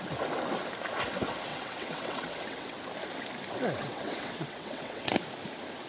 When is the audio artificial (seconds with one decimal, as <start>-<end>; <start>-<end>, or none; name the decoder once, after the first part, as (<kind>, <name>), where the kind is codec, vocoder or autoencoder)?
1.5-2.8 (vocoder, WaveNeXt); 3.8-5.1